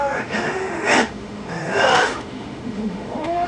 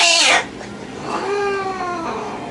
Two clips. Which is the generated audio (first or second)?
first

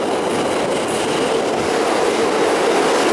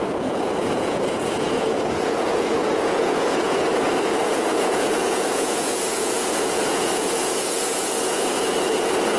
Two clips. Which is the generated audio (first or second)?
second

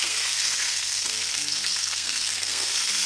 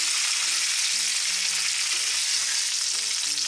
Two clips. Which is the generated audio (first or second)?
first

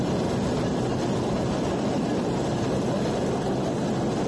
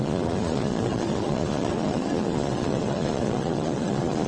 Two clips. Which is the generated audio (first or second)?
second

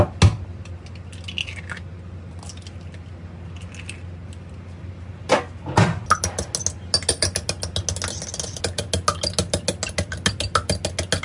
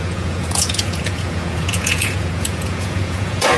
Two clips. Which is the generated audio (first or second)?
second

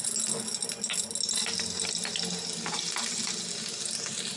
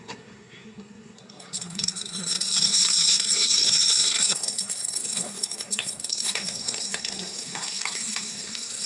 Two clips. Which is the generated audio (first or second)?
second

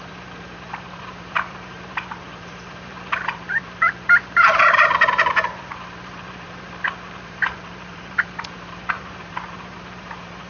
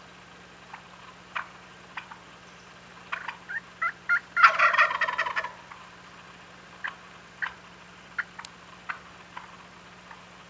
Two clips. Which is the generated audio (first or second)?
first